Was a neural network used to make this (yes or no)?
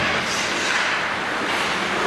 no